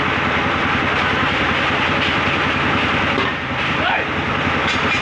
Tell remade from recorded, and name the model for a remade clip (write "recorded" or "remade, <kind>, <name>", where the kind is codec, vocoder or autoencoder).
remade, vocoder, BigVGAN v2